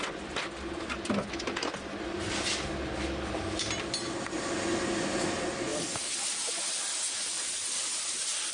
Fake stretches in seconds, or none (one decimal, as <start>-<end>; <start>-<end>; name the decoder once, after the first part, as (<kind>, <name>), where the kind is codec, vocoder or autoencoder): none